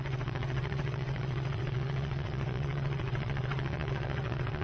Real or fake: fake